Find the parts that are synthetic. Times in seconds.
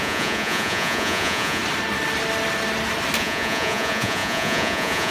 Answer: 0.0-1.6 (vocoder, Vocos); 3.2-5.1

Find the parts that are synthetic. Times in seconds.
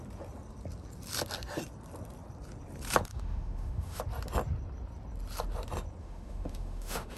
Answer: 3.1-4.0 (autoencoder, DAC-VAE); 6.0-7.2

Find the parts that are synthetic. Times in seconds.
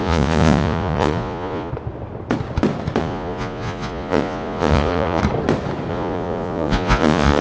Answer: 0.0-1.7 (vocoder, Vocos); 3.0-5.2; 5.9-7.4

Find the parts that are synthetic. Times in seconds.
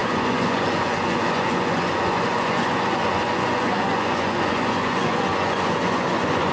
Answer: 0.0-6.5 (vocoder, Vocos)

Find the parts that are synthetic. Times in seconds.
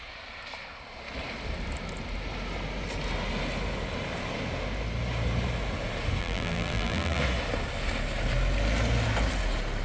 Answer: 6.2-7.2 (vocoder, BigVGAN v2)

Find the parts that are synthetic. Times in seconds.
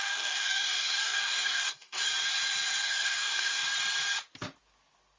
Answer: 0.0-2.1 (codec, DAC); 2.8-3.6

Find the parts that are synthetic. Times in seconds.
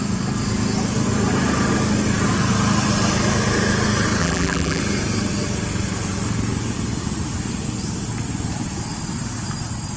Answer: 4.2-4.8 (vocoder, BigVGAN v2)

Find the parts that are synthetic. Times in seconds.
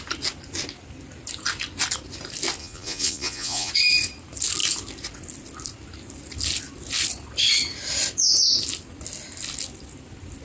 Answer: 2.6-3.7 (vocoder, Vocos)